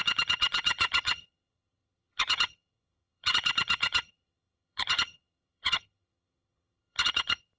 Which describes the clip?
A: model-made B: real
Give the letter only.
A